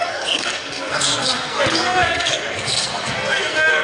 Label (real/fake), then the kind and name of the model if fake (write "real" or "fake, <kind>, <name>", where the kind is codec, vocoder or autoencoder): fake, codec, SNAC